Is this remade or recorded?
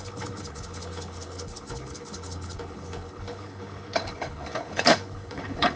remade